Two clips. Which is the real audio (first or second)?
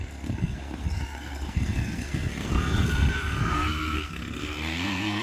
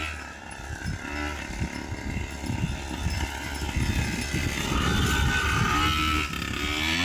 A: second